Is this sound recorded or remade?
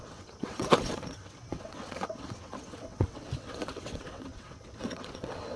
remade